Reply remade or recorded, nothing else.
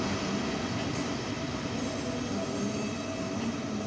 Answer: recorded